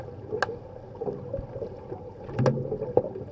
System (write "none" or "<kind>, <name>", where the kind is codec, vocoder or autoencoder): none